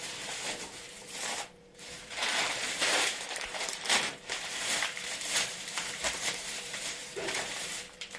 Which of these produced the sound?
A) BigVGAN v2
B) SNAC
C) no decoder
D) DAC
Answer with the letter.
A